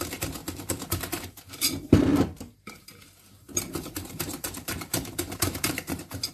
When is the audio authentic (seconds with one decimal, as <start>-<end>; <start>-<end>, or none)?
0.4-1.1